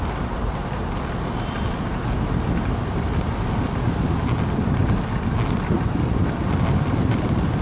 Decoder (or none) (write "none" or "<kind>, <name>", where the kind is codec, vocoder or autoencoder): none